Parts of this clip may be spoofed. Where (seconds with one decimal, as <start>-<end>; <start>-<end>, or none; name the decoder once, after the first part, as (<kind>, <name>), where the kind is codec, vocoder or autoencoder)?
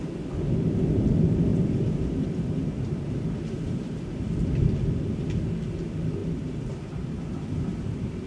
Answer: 1.5-4.1 (vocoder, BigVGAN v2); 6.2-8.3